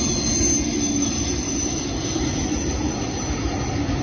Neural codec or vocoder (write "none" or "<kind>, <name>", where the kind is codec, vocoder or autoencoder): none